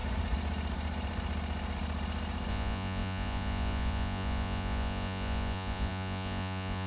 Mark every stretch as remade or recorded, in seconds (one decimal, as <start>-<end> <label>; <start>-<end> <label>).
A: 0.0-2.5 recorded; 2.5-6.9 remade